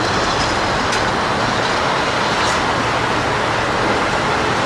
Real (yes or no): yes